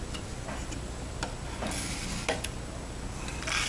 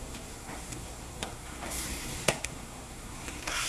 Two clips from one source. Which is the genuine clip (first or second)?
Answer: first